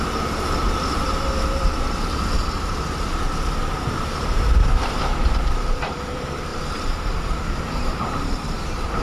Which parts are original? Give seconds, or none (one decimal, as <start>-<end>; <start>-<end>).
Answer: none